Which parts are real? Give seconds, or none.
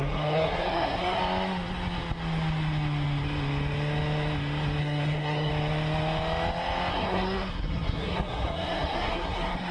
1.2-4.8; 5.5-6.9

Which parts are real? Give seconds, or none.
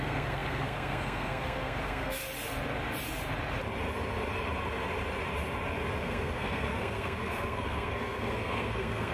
2.2-6.0